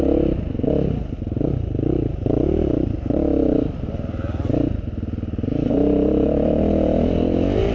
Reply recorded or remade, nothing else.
recorded